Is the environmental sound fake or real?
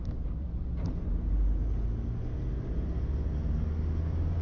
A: real